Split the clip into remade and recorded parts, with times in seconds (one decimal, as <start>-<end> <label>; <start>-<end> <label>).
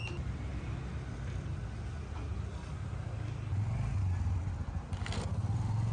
0.0-5.9 recorded